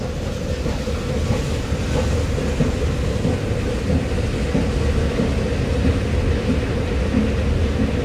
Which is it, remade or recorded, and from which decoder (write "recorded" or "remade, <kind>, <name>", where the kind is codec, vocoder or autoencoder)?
recorded